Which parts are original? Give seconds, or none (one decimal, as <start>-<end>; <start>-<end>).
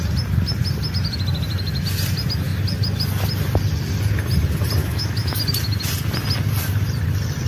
0.0-4.8; 5.4-7.5